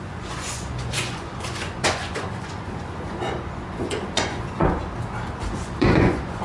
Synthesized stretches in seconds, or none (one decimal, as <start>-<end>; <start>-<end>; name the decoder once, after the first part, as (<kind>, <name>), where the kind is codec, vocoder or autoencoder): 0.0-4.8 (vocoder, Vocos); 5.4-6.4